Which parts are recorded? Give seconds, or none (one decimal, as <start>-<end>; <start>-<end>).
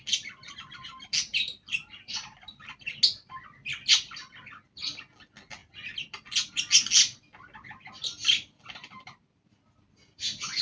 0.0-1.3; 2.8-10.6